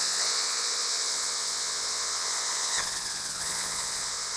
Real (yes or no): no